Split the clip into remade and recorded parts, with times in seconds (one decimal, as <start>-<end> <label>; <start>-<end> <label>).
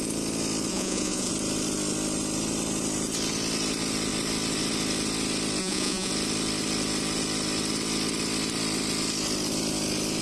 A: 0.0-0.7 recorded; 0.7-1.3 remade; 1.3-5.6 recorded; 5.6-6.1 remade; 6.1-10.2 recorded